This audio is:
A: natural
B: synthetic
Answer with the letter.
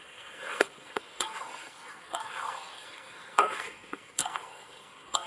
B